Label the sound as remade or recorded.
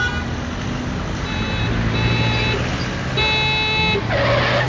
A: recorded